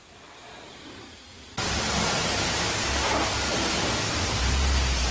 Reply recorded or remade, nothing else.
recorded